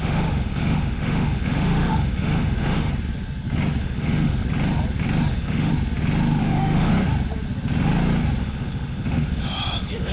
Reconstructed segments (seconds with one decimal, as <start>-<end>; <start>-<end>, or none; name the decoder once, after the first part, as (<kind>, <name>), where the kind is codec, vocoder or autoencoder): 0.0-2.9 (autoencoder, DAC-VAE); 3.8-4.4; 5.3-5.7; 6.4-6.9; 8.4-10.1